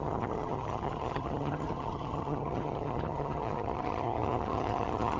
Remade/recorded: remade